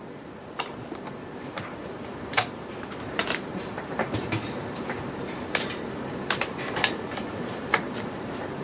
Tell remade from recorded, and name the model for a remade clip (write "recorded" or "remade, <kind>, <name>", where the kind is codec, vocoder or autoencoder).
remade, vocoder, BigVGAN v2